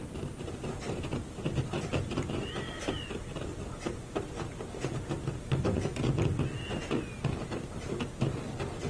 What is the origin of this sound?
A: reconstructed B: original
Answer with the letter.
B